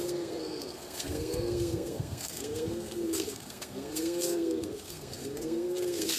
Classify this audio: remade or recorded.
remade